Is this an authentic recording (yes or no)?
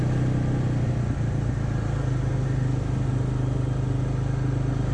yes